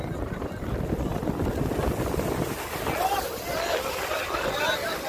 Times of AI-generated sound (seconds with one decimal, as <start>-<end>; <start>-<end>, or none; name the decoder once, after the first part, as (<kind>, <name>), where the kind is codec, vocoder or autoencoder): none